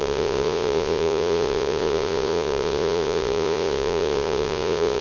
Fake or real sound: fake